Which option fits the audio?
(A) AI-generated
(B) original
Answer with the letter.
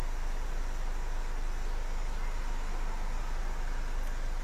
B